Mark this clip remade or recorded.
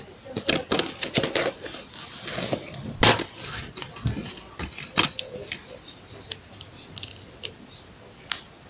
recorded